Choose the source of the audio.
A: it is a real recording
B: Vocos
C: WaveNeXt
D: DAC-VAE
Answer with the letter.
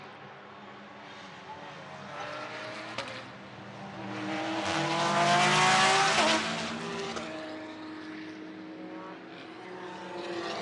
A